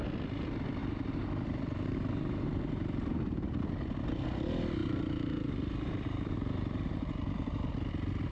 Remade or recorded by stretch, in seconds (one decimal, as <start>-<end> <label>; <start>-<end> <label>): 0.0-0.8 recorded; 0.8-3.6 remade; 3.6-4.8 recorded; 4.8-7.7 remade; 7.7-8.3 recorded